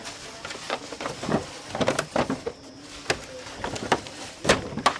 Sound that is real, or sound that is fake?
real